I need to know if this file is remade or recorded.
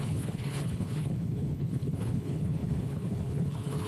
remade